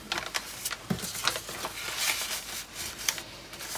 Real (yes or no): yes